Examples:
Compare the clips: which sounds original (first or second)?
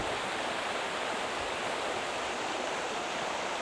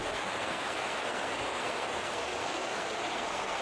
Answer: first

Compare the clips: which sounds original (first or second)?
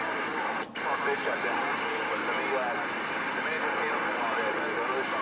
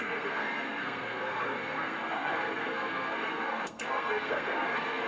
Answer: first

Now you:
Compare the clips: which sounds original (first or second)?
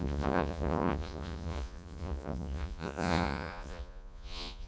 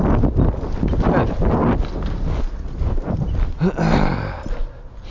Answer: second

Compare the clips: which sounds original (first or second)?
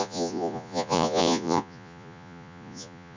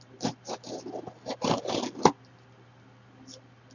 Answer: second